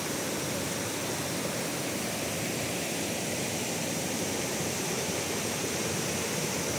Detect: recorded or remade remade